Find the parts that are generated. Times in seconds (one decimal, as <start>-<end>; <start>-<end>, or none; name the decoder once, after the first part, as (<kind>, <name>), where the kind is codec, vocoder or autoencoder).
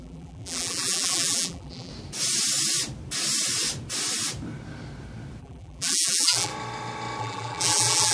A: 0.0-1.9 (vocoder, BigVGAN v2); 5.4-6.5; 7.2-8.1